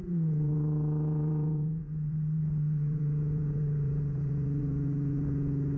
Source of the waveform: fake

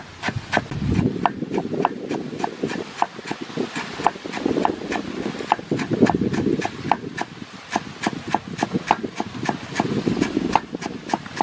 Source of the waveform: real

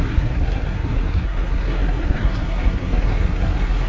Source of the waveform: fake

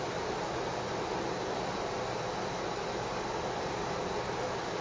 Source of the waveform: real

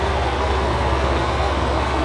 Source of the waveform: fake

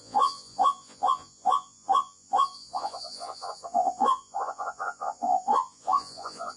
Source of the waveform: fake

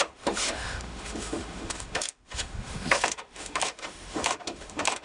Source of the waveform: fake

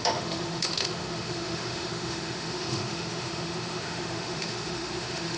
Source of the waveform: fake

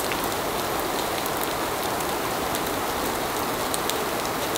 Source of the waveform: real